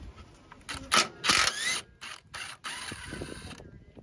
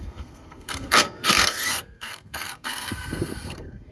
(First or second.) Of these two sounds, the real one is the first